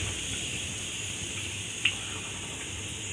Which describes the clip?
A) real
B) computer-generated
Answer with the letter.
A